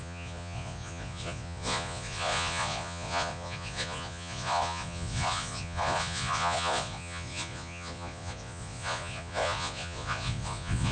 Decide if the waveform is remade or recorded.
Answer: remade